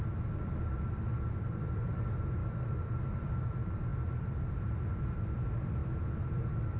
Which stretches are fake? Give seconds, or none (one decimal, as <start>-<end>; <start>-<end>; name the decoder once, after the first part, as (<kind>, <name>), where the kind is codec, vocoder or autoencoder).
none